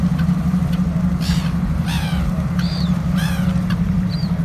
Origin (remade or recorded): remade